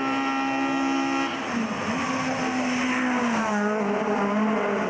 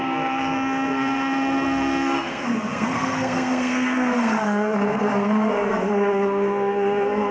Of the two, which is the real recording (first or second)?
first